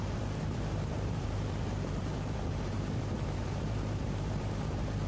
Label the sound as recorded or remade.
remade